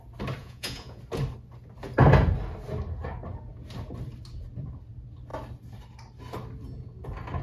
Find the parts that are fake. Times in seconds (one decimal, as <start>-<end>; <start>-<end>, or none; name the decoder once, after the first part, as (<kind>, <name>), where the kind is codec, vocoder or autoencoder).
0.4-1.0 (vocoder, Vocos)